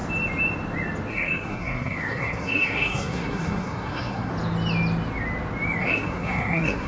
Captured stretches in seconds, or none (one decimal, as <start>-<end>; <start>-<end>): 0.0-1.1; 4.3-5.8